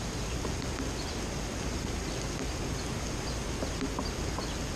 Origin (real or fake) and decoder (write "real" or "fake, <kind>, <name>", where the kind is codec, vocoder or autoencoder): real